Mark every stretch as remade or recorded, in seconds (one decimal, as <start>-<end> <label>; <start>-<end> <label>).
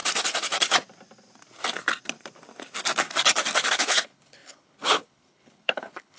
0.0-3.7 recorded; 3.7-6.2 remade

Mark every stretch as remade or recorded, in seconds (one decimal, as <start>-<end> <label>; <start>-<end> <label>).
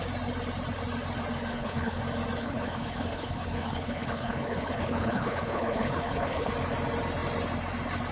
0.0-1.5 recorded; 1.5-2.0 remade; 2.0-2.4 recorded; 2.4-6.5 remade; 6.5-8.1 recorded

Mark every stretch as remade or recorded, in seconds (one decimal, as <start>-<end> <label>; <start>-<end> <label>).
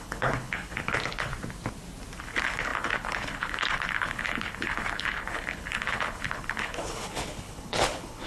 0.0-1.3 remade; 1.3-2.2 recorded; 2.2-8.3 remade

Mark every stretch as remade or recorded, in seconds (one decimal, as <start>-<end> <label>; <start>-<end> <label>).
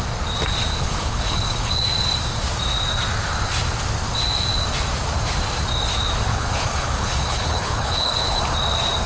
0.0-0.7 recorded; 0.7-1.7 remade; 1.7-6.3 recorded; 6.3-8.4 remade; 8.4-9.1 recorded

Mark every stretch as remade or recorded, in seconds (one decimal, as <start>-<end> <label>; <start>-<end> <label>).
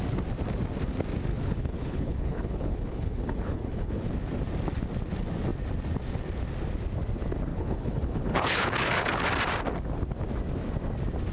0.0-1.3 recorded; 1.3-4.1 remade; 4.1-7.5 recorded; 7.5-9.2 remade; 9.2-11.3 recorded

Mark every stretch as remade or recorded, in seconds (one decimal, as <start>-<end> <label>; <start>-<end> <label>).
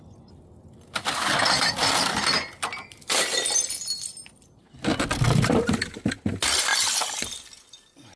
0.0-8.2 recorded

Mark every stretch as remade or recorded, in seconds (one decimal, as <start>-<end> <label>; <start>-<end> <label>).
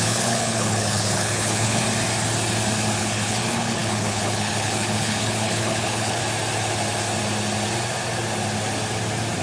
0.0-1.8 remade; 1.8-3.0 recorded; 3.0-6.2 remade; 6.2-9.4 recorded